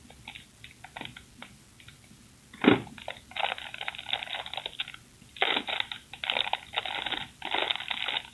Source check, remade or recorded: recorded